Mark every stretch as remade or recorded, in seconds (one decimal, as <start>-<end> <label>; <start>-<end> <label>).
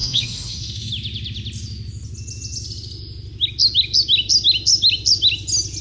0.0-0.9 remade; 0.9-5.8 recorded